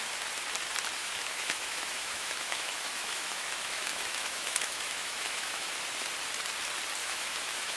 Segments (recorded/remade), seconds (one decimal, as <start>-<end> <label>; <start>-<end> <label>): 0.0-1.0 recorded; 1.0-5.7 remade; 5.7-7.0 recorded; 7.0-7.8 remade